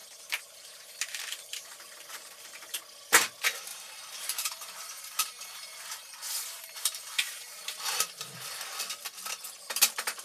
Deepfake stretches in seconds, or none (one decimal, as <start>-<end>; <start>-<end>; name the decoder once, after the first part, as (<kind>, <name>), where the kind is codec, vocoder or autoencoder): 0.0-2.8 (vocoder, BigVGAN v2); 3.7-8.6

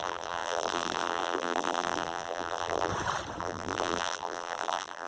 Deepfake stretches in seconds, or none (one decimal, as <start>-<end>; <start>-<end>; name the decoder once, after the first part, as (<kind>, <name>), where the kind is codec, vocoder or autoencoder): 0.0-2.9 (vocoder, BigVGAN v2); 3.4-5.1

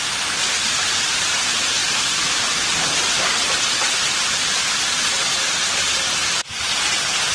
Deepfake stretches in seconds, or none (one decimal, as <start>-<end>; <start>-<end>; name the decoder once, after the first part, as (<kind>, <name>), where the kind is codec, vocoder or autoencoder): 0.6-1.4 (vocoder, BigVGAN v2); 1.8-2.5

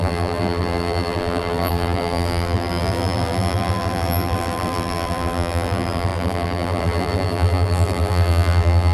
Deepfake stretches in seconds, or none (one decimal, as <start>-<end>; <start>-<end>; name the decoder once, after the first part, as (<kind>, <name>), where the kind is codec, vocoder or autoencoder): 0.0-8.9 (vocoder, BigVGAN v2)

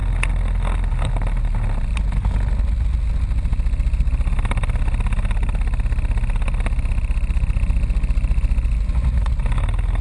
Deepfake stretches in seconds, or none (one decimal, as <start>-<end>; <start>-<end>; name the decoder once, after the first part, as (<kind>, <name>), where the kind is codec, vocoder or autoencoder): none